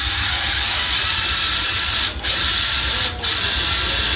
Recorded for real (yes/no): yes